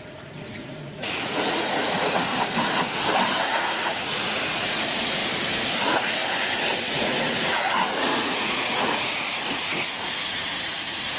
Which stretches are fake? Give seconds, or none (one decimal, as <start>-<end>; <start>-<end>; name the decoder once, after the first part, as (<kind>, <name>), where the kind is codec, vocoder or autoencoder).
0.0-2.3 (vocoder, Vocos); 3.4-5.2; 5.8-6.2; 6.8-11.2